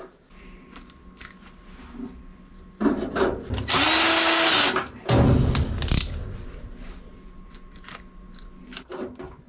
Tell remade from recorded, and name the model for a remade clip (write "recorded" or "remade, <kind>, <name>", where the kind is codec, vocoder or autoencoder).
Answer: recorded